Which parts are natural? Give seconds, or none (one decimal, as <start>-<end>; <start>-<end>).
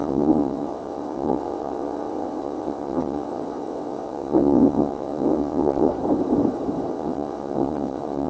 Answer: 5.9-6.9